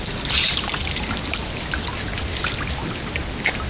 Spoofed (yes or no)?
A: no